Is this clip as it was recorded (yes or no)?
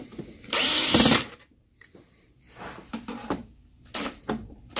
no